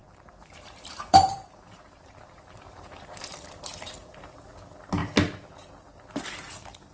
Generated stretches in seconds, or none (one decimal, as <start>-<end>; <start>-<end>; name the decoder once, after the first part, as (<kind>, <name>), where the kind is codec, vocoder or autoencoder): 0.0-4.1 (vocoder, BigVGAN v2)